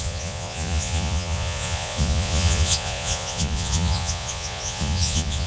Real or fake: fake